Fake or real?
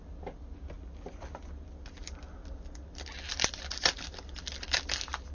real